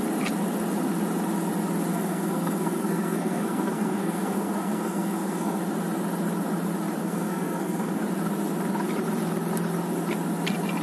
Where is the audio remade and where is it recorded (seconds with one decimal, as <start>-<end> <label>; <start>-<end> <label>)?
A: 0.0-1.9 recorded; 1.9-5.6 remade; 5.6-7.0 recorded; 7.0-8.0 remade; 8.0-10.8 recorded